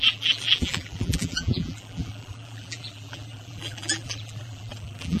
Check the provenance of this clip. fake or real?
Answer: fake